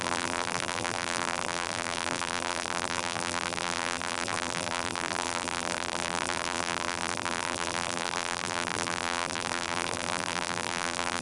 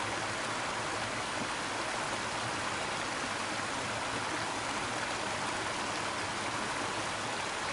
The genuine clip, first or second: second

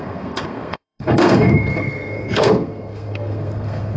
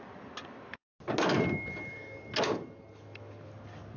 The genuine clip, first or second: second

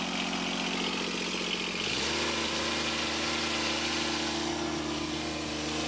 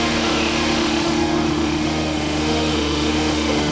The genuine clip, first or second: first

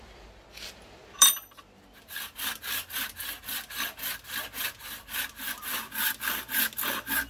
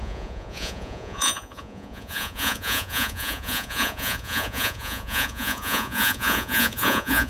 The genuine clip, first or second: first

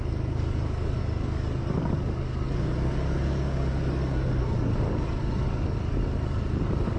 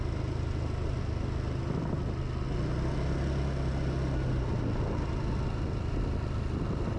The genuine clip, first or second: second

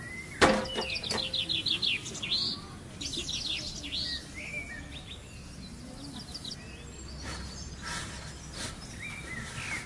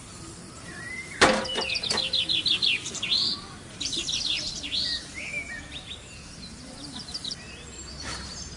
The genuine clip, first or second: first